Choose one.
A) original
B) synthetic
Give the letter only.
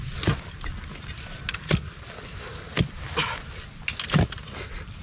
A